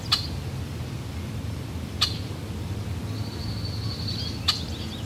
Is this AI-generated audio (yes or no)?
no